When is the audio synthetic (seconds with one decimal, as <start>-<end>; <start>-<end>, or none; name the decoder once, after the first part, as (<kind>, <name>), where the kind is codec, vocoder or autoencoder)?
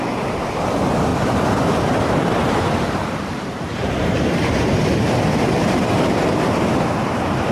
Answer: 0.0-1.1 (vocoder, BigVGAN v2); 2.6-7.5